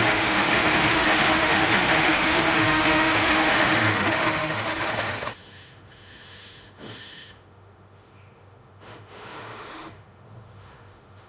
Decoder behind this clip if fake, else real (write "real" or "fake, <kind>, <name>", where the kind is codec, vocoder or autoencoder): fake, autoencoder, DAC-VAE